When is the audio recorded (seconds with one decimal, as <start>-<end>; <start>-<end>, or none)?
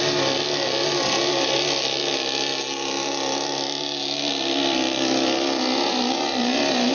0.0-6.9